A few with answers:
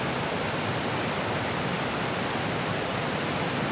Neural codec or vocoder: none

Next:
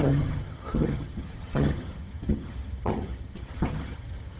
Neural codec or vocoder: vocoder, HiFi-GAN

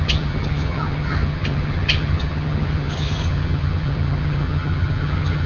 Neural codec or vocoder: vocoder, HiFi-GAN